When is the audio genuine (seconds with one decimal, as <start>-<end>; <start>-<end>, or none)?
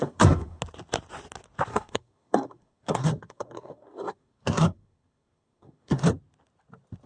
0.6-1.7; 6.0-7.1